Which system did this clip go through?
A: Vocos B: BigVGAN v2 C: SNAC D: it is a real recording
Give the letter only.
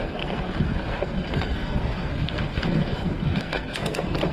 C